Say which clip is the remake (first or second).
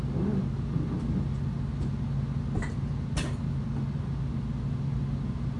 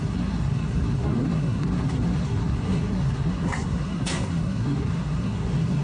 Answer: second